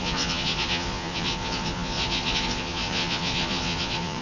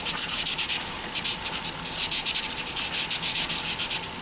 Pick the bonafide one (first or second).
second